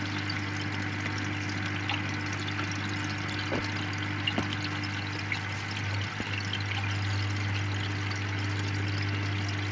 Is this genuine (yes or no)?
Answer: yes